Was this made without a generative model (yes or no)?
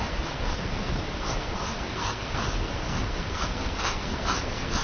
no